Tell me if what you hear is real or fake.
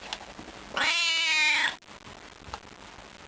real